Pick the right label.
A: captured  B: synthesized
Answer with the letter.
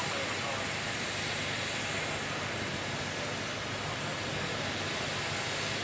A